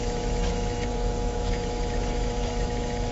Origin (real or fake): fake